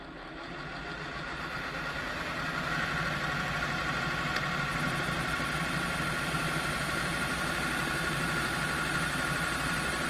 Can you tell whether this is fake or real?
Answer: fake